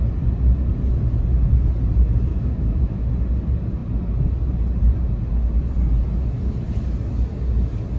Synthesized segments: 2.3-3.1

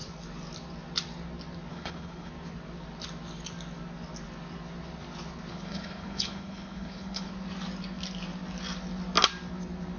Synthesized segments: 1.7-2.3; 5.5-7.3

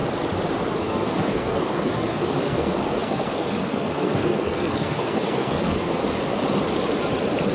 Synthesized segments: 0.8-6.0

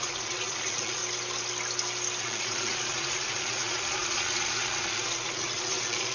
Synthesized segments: 0.0-1.0; 2.2-6.1

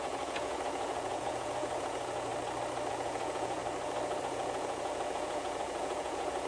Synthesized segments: 0.0-2.3; 2.9-3.6; 4.2-6.5

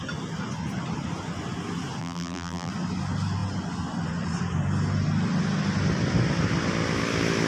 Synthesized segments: 2.0-2.7

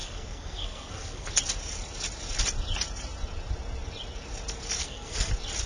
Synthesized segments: 0.0-1.3; 4.8-5.3